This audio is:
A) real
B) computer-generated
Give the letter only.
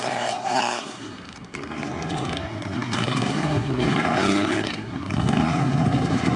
B